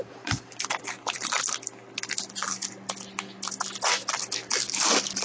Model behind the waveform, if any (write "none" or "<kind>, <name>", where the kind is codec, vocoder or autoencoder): none